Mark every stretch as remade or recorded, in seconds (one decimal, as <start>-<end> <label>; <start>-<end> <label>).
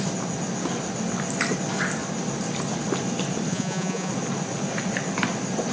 0.0-3.5 recorded; 3.5-4.1 remade; 4.1-5.7 recorded